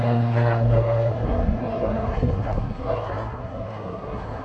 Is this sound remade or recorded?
remade